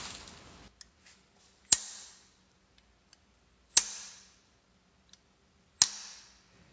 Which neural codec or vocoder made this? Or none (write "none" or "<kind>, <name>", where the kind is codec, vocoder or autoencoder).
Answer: none